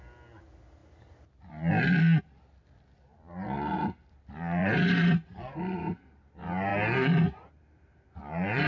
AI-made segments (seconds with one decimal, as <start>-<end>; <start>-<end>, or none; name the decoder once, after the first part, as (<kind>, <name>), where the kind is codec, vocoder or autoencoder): 4.6-5.4 (vocoder, BigVGAN v2)

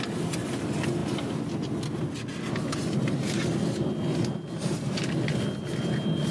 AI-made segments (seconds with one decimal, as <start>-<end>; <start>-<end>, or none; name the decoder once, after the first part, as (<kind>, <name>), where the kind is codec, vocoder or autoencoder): none